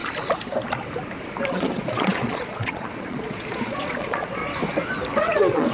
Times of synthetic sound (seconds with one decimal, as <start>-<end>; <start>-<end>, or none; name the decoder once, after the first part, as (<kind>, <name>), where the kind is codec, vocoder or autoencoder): 1.5-4.4 (vocoder, Vocos); 5.2-5.7